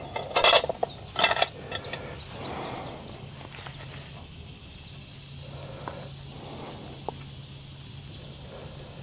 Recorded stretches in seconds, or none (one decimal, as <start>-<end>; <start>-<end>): 0.0-9.0